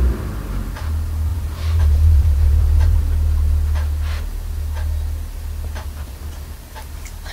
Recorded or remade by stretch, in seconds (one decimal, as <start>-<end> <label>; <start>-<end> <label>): 0.0-1.3 recorded; 1.3-3.0 remade; 3.0-7.3 recorded